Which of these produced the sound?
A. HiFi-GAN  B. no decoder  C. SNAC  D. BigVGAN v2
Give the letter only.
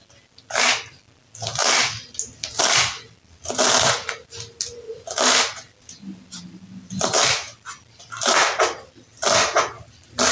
B